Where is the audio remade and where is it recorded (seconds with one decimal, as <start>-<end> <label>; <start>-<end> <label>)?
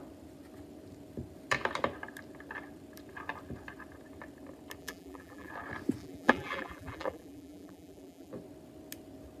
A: 0.0-4.8 recorded; 4.8-5.5 remade; 5.5-6.0 recorded; 6.0-8.3 remade; 8.3-9.4 recorded